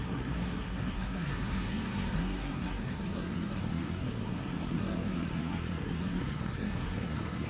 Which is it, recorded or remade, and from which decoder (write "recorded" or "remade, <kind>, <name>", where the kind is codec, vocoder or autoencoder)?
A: remade, codec, SNAC